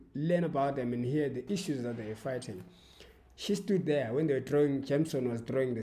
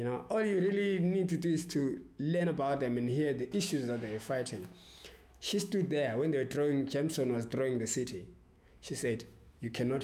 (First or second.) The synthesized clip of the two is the second